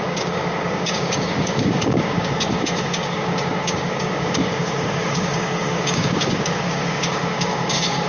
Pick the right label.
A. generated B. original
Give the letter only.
A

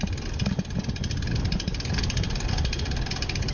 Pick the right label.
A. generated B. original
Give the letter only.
B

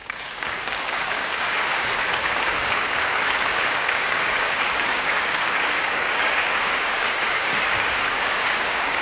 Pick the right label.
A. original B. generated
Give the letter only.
B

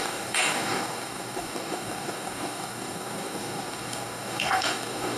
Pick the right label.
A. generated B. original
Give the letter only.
A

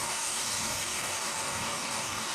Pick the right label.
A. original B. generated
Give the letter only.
B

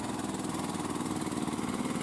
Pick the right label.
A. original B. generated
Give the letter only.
A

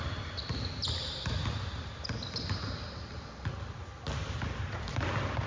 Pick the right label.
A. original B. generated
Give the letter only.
A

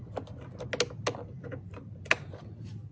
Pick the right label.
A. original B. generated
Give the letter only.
A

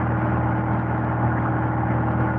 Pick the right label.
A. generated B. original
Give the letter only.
B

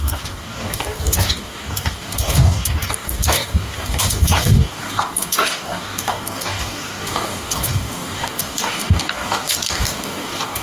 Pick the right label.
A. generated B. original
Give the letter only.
A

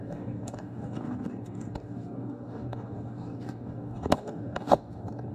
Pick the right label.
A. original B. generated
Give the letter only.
B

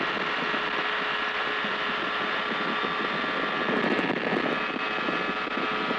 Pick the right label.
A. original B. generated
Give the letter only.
A